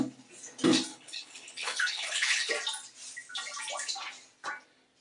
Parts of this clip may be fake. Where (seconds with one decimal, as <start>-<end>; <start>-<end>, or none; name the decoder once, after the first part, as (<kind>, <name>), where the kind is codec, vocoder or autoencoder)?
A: 0.9-2.5 (codec, HILCodec)